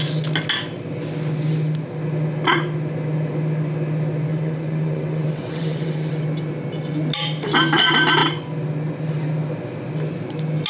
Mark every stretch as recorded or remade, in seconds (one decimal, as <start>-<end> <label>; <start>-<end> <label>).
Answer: 0.0-4.3 recorded; 4.3-6.1 remade; 6.1-10.7 recorded